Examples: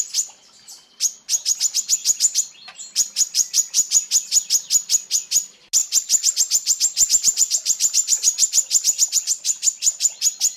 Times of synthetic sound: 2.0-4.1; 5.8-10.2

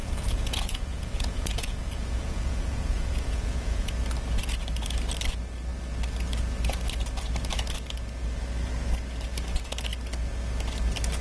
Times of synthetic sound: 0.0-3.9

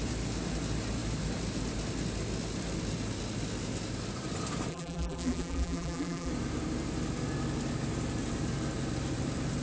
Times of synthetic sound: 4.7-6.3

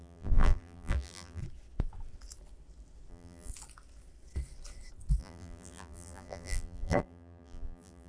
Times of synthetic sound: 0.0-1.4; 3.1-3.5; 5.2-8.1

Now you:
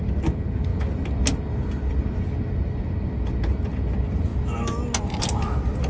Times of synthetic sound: none

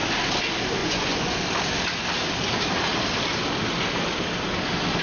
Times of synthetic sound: 0.8-1.4

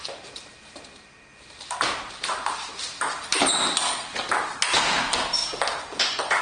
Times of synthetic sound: 0.0-0.5; 2.4-3.3; 4.5-5.4

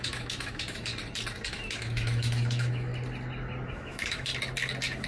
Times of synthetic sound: 0.0-0.9; 1.5-2.9; 3.7-4.3